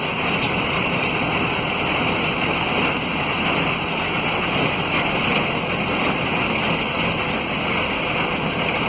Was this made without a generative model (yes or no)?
yes